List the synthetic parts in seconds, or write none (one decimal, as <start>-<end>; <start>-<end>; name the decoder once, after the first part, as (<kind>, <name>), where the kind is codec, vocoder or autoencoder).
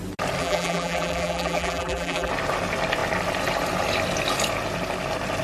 0.4-2.3 (vocoder, BigVGAN v2)